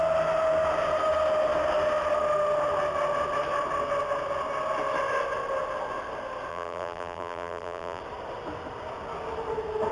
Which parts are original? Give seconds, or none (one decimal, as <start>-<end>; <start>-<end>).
0.0-6.5; 8.0-9.9

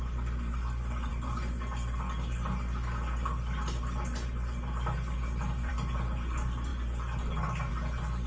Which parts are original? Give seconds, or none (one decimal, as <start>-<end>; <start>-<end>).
0.0-8.3

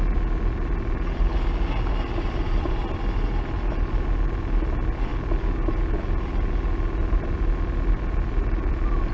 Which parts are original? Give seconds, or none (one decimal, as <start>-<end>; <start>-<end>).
0.0-9.1

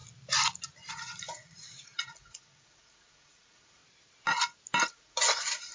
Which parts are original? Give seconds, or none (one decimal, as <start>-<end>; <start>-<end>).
0.0-0.9; 3.8-4.8

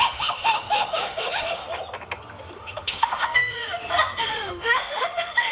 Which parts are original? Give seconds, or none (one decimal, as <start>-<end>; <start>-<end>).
1.6-2.6; 3.6-4.2

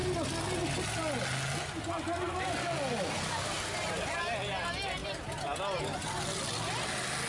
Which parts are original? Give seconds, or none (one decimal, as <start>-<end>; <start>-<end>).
0.0-7.3

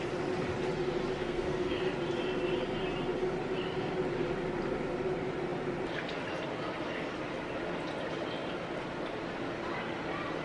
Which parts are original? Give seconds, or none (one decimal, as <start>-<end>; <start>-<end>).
0.0-1.2; 1.8-10.4

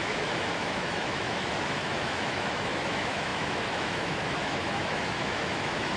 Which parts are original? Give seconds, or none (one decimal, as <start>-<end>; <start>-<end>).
none